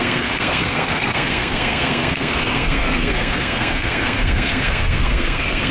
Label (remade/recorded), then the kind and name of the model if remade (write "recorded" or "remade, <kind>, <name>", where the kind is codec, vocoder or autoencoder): remade, codec, SNAC